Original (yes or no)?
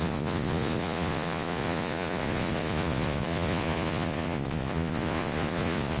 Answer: no